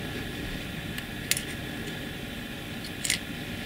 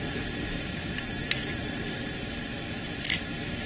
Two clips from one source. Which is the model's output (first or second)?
second